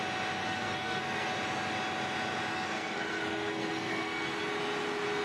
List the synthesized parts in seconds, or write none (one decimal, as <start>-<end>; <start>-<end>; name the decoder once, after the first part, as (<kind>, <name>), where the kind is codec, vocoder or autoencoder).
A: 0.4-1.3 (codec, SNAC); 2.5-4.4